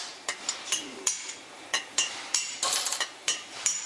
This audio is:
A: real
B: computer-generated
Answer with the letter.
B